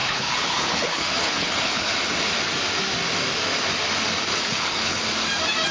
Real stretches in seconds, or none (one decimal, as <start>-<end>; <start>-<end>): 1.9-4.3; 5.0-5.7